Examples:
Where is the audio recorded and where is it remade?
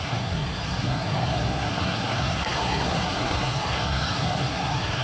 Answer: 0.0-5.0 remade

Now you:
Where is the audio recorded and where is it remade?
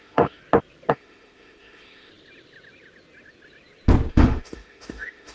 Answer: 0.0-0.4 remade; 0.4-0.9 recorded; 0.9-2.1 remade; 2.1-4.1 recorded; 4.1-5.3 remade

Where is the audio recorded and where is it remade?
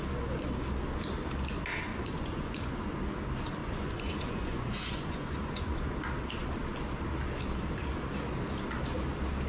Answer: 0.0-1.9 recorded; 1.9-3.0 remade; 3.0-3.6 recorded; 3.6-5.9 remade; 5.9-9.5 recorded